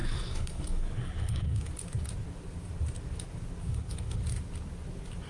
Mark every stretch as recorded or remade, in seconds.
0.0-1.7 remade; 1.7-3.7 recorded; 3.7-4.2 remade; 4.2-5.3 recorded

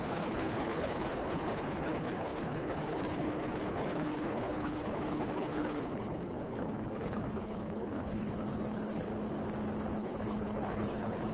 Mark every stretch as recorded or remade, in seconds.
0.0-9.1 remade; 9.1-9.8 recorded; 9.8-11.3 remade

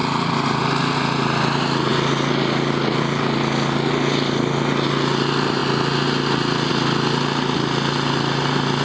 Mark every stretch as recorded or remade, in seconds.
0.0-8.8 recorded

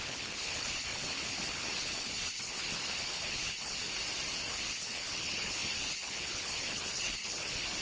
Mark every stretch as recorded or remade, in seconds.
0.0-3.9 remade; 3.9-4.5 recorded; 4.5-7.8 remade